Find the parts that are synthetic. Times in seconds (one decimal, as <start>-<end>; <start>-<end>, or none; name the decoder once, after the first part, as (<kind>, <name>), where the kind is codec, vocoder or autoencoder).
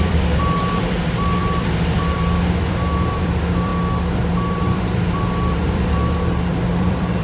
0.0-3.7 (vocoder, BigVGAN v2); 4.6-7.2